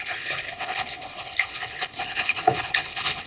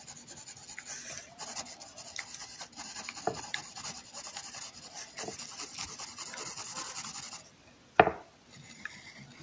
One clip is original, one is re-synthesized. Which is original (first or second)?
second